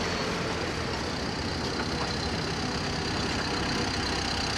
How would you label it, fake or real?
real